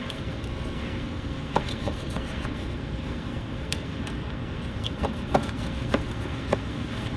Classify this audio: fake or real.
fake